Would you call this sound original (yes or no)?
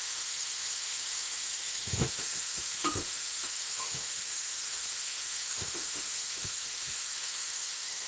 no